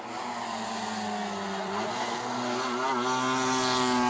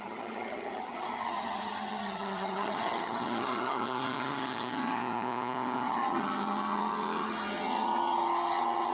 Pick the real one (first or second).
first